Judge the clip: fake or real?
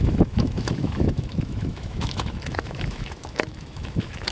fake